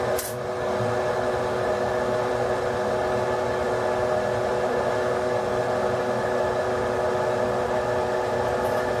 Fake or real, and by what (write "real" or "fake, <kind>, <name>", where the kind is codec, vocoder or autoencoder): real